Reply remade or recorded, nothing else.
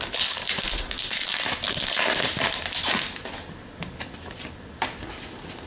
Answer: recorded